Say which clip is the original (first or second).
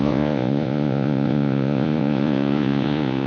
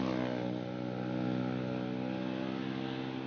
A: second